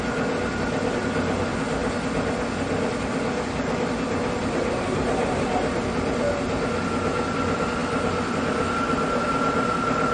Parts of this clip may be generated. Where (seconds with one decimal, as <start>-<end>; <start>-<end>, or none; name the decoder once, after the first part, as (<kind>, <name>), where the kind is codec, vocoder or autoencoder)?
none